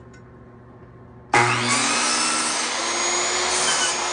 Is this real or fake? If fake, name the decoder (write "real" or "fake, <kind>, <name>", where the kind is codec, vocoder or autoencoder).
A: real